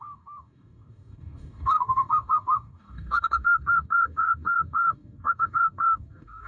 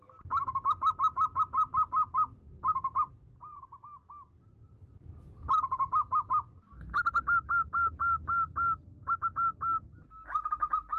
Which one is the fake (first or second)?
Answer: first